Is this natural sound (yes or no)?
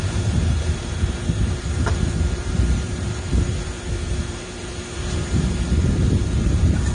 no